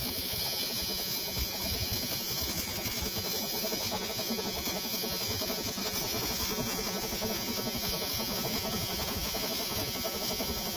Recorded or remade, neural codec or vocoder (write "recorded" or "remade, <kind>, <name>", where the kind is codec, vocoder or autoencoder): remade, vocoder, Vocos